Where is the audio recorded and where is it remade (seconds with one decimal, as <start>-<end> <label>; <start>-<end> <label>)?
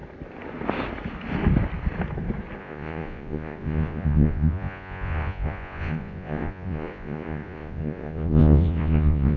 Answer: 0.0-2.6 recorded; 2.6-9.4 remade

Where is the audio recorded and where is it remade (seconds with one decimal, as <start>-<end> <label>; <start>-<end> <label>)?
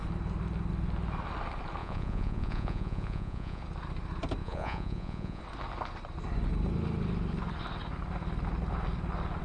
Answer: 0.0-1.8 recorded; 1.8-3.6 remade; 3.6-4.4 recorded; 4.4-5.4 remade; 5.4-9.4 recorded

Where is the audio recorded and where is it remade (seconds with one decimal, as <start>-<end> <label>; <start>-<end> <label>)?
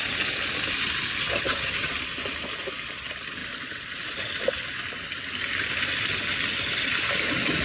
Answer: 0.0-1.2 recorded; 1.2-1.9 remade; 1.9-7.6 recorded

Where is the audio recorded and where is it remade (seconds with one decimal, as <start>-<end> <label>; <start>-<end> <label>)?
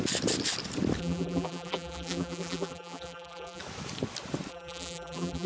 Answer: 0.0-1.0 recorded; 1.0-3.6 remade; 3.6-4.5 recorded; 4.5-5.5 remade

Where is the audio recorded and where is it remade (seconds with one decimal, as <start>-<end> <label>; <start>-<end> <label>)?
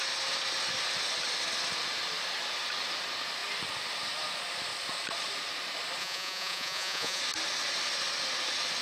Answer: 0.0-6.0 recorded; 6.0-7.2 remade; 7.2-8.8 recorded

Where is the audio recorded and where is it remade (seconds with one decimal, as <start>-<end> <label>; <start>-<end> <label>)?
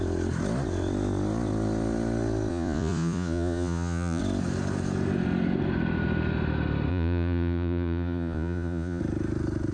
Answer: 0.0-2.5 recorded; 2.5-4.2 remade; 4.2-6.9 recorded; 6.9-9.0 remade; 9.0-9.7 recorded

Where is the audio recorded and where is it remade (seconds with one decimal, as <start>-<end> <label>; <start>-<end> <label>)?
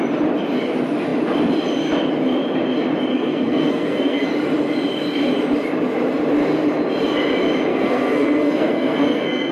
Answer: 0.0-3.1 recorded; 3.1-4.3 remade; 4.3-7.7 recorded; 7.7-9.5 remade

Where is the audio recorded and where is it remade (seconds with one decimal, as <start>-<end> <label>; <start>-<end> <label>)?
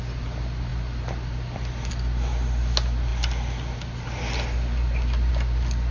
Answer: 0.0-5.9 recorded